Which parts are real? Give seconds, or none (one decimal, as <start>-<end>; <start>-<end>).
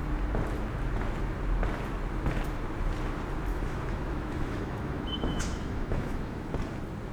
0.0-3.5; 6.5-7.1